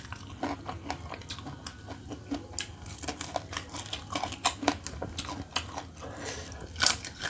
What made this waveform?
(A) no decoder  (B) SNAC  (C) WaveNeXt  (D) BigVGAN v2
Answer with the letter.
A